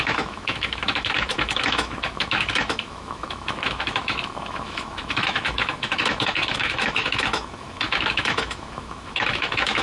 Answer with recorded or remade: remade